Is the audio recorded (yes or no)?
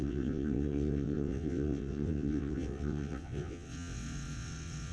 no